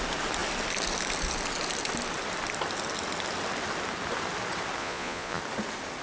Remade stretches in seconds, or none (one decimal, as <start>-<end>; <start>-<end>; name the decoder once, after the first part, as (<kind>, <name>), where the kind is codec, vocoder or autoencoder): 4.8-5.4 (vocoder, Vocos)